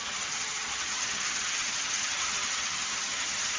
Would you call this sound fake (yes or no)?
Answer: yes